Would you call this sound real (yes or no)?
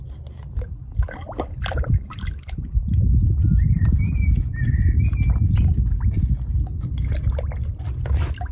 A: yes